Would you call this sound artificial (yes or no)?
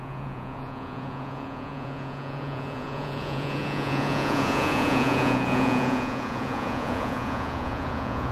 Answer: yes